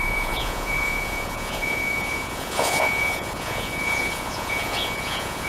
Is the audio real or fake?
fake